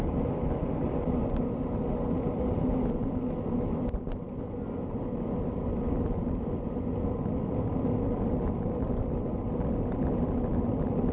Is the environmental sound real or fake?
real